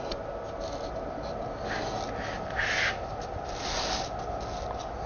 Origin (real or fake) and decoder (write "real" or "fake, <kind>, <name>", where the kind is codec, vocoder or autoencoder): real